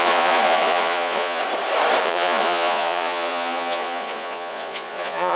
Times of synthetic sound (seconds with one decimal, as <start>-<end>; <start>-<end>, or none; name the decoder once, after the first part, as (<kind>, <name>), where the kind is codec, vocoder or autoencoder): 0.0-1.4 (vocoder, Vocos); 2.0-5.4